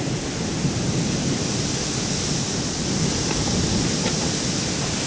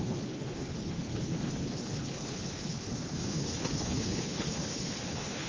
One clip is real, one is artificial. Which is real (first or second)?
first